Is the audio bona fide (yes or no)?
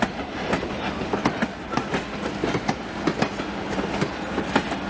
yes